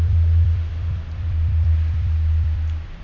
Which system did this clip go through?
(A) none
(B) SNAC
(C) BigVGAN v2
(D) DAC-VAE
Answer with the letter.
C